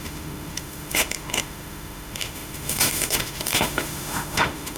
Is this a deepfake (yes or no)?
yes